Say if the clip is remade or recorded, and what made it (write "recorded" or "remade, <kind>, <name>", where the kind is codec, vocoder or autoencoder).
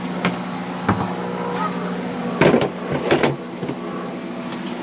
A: recorded